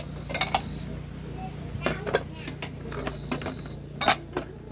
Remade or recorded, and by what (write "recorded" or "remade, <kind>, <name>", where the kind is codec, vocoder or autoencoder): recorded